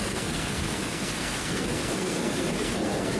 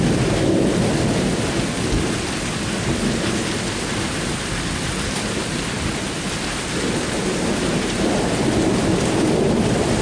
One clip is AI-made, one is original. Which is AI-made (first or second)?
first